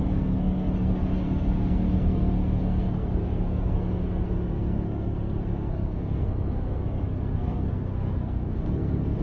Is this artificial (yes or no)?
yes